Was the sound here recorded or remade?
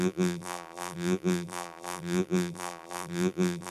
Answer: remade